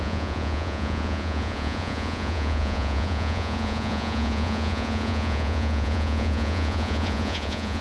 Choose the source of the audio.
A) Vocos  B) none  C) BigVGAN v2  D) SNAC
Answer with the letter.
A